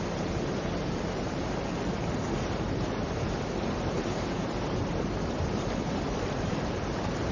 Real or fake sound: fake